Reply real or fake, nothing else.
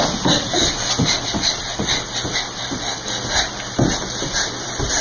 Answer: fake